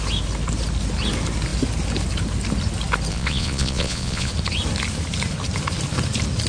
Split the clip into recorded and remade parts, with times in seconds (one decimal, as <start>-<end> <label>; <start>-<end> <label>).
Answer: 0.0-3.1 recorded; 3.1-4.3 remade; 4.3-6.5 recorded